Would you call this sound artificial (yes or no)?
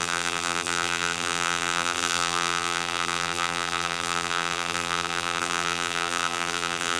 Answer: yes